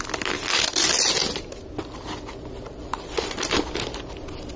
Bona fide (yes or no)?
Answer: yes